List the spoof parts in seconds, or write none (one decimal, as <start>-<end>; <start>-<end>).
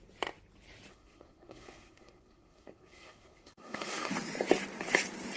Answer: 0.9-4.1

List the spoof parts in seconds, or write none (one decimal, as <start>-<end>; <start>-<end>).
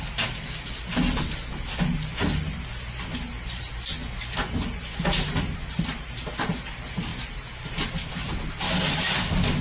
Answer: none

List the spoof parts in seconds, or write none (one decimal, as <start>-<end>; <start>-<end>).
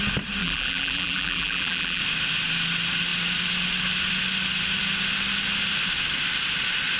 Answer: 0.4-2.0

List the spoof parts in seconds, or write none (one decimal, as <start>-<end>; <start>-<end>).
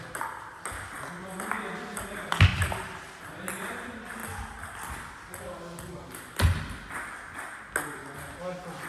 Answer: none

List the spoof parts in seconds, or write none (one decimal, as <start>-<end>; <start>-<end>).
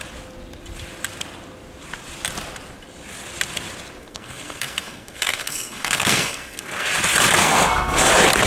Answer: 4.0-6.9; 7.4-8.1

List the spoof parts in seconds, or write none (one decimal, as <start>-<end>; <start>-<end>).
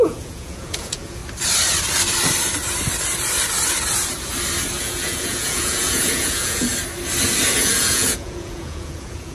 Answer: 0.0-1.2; 4.8-6.7; 7.5-9.3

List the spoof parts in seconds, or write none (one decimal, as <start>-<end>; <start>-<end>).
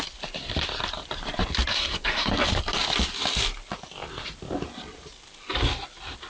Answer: 1.7-2.3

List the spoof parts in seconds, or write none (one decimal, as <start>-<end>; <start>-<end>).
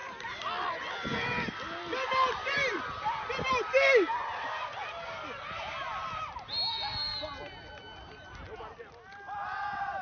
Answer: none